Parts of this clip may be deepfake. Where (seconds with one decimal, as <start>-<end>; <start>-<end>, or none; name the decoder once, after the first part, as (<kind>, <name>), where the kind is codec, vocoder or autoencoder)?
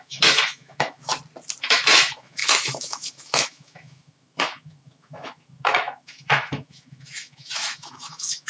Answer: 0.0-1.1 (autoencoder, DAC-VAE); 1.6-8.5